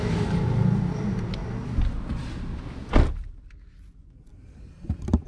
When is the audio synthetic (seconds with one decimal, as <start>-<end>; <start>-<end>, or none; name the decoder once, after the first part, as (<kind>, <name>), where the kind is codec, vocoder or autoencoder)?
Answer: none